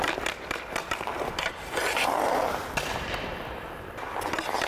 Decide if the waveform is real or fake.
real